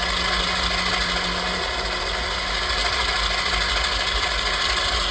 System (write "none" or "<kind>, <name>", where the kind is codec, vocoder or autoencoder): none